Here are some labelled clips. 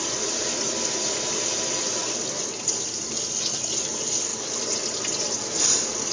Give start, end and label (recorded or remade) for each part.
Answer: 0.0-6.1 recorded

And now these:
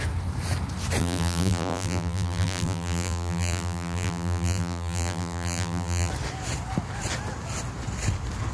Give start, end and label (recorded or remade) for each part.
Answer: 0.0-1.0 recorded; 1.0-6.1 remade; 6.1-8.5 recorded